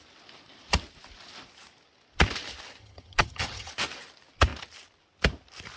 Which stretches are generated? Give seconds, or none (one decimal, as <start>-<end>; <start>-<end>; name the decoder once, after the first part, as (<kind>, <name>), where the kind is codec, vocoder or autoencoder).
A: 2.8-3.7 (vocoder, HiFi-GAN)